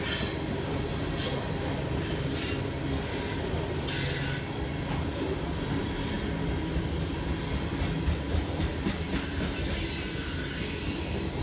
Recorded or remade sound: recorded